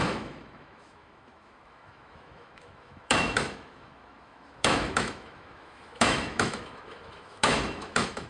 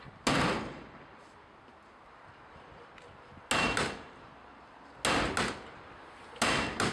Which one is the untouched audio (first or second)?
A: second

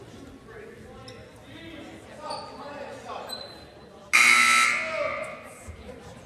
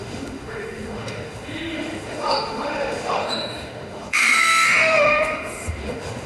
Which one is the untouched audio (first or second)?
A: first